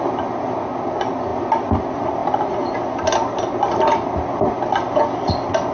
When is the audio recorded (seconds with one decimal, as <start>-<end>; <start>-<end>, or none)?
0.0-5.7